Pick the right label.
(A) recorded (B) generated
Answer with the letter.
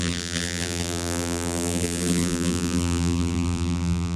B